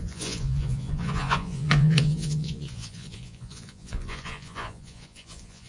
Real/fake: fake